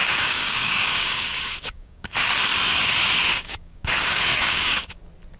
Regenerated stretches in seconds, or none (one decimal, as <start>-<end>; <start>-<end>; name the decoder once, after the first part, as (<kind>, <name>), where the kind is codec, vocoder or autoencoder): 0.0-2.3 (codec, DAC); 3.3-5.0